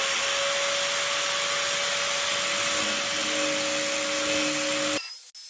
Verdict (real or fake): real